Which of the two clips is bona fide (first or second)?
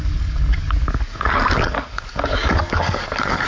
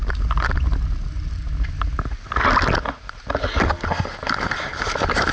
second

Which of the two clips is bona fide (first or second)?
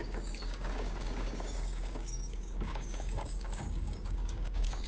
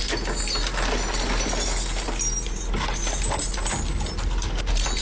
second